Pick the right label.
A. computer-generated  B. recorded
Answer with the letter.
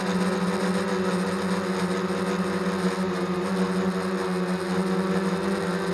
B